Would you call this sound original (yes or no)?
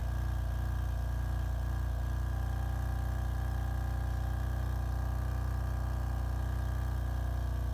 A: yes